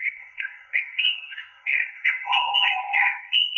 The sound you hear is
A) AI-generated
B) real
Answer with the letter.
A